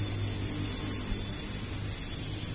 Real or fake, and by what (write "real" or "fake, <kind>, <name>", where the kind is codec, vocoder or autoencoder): real